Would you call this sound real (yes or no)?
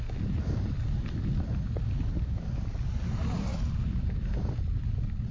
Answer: yes